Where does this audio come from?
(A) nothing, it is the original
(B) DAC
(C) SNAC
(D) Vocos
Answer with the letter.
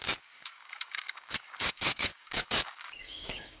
B